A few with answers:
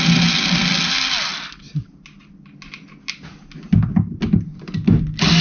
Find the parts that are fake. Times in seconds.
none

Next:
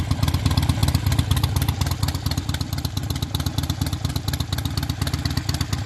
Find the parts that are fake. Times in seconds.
none

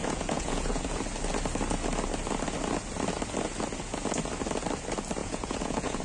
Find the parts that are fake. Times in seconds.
0.0-0.8; 5.2-6.0

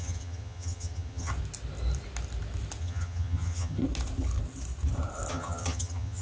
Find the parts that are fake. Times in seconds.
0.0-1.3; 2.8-3.8; 5.3-6.2

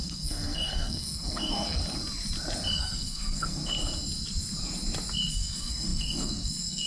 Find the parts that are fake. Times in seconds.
0.0-1.8; 2.8-3.6; 5.3-6.9